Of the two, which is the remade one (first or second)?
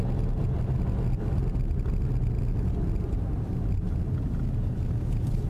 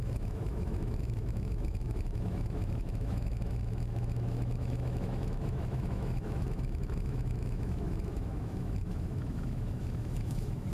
second